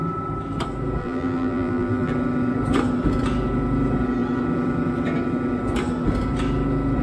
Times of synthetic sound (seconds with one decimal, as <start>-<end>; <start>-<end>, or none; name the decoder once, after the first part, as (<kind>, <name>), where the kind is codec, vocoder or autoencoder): 1.0-2.1 (vocoder, BigVGAN v2)